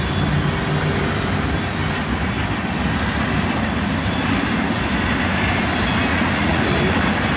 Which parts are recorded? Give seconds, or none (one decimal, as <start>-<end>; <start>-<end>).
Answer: 0.0-6.1; 6.6-7.4